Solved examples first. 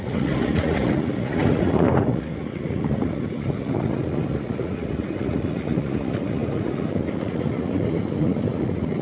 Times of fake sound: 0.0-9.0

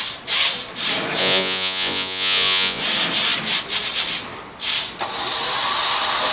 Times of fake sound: 1.2-2.8

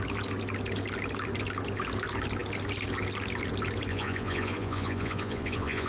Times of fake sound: 3.9-5.9

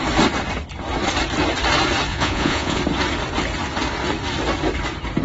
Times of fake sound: 2.1-2.8

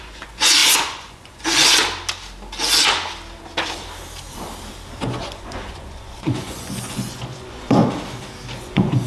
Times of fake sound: 0.0-1.8; 5.0-7.8; 8.6-9.1